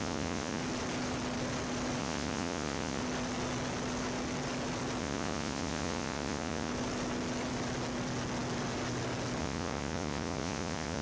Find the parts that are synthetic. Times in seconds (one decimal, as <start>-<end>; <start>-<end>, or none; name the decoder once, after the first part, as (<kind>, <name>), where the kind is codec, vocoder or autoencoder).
0.0-0.6 (vocoder, Vocos); 2.0-3.0; 5.0-6.7; 9.4-11.0